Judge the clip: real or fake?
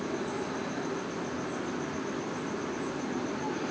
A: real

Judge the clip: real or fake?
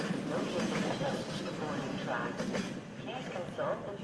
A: real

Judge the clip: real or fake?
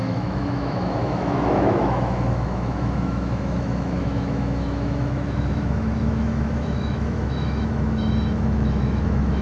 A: fake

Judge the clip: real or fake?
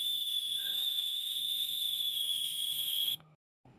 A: fake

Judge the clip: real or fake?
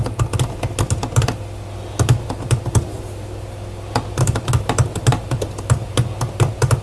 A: real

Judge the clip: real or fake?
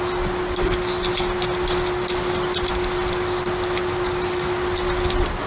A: real